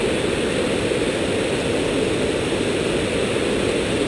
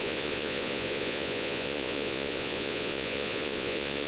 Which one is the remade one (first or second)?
second